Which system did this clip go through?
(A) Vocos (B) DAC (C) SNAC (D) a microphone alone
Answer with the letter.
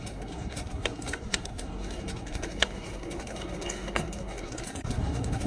C